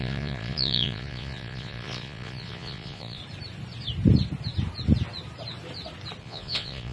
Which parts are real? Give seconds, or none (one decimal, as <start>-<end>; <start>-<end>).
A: 3.2-6.2

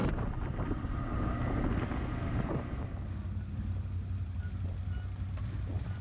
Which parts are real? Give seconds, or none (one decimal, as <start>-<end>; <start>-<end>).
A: 0.0-6.0

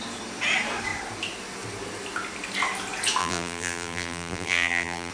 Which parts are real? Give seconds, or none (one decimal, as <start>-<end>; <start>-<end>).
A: 0.0-3.2

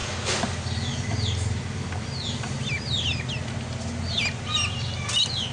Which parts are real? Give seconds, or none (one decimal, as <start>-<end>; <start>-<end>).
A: 0.0-5.5

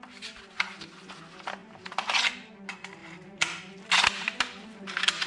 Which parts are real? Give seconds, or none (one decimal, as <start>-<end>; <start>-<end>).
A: 0.0-3.0; 4.8-5.3